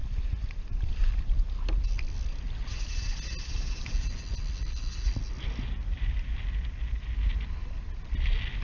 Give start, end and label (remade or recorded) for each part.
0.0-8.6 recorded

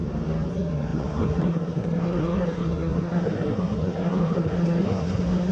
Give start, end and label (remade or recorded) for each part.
0.0-0.5 recorded; 0.5-5.5 remade

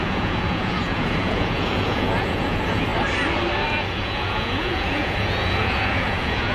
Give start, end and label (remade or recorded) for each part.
0.0-2.9 remade; 2.9-3.7 recorded; 3.7-6.5 remade

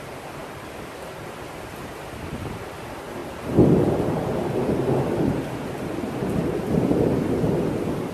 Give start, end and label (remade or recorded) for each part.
0.0-8.1 recorded